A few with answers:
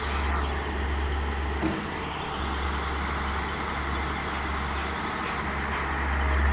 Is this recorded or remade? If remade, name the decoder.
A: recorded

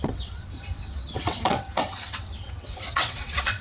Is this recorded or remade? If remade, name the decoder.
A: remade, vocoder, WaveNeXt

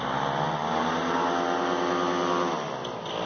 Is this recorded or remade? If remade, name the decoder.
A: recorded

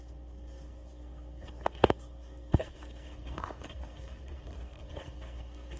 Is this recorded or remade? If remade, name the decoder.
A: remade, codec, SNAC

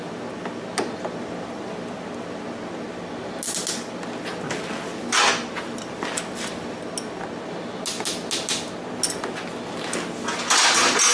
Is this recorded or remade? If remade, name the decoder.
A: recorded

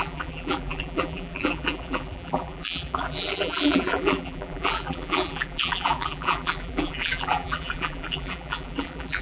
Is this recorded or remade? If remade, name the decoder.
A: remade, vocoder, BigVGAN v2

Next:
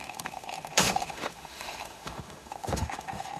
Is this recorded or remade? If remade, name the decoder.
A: remade, autoencoder, DAC-VAE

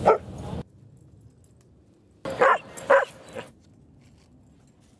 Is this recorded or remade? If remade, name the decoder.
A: recorded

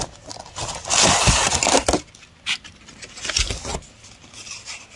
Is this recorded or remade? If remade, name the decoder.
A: recorded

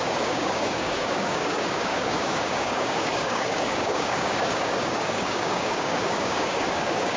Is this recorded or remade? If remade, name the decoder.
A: remade, codec, DAC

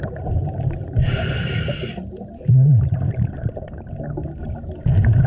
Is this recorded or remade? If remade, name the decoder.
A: recorded